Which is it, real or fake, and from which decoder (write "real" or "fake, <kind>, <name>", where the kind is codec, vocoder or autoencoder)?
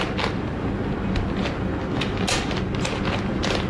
real